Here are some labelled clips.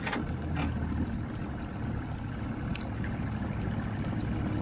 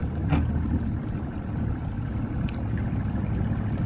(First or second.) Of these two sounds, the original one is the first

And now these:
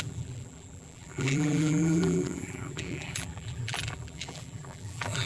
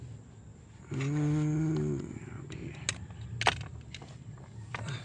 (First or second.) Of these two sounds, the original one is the second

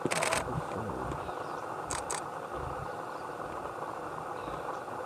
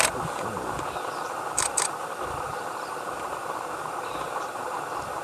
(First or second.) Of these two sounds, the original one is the first